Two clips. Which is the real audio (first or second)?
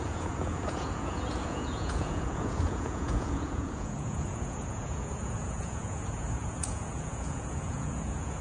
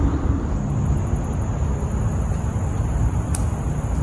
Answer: second